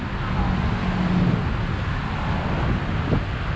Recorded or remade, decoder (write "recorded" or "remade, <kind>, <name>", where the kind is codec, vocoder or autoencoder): recorded